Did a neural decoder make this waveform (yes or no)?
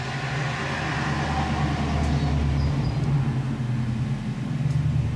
no